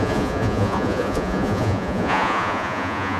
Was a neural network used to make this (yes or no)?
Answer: yes